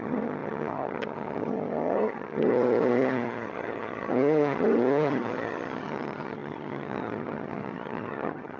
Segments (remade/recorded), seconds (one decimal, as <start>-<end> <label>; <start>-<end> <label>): 0.0-8.6 remade